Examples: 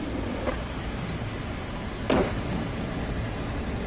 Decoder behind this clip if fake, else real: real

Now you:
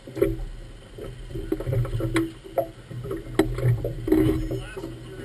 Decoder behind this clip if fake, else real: real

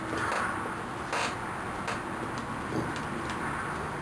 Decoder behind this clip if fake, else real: real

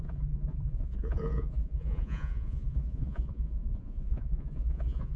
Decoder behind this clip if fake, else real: fake, vocoder, Vocos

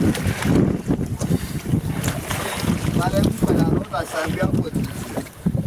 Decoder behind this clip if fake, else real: real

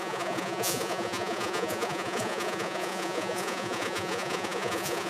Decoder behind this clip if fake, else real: fake, vocoder, Vocos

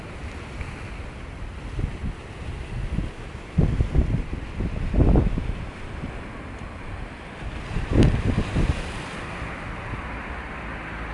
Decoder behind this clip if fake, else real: real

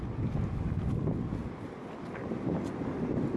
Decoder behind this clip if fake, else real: real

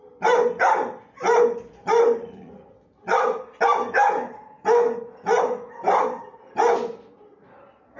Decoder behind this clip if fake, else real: real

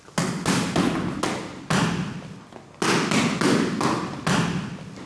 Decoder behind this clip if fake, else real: real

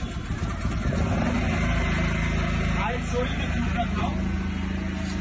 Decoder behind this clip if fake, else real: real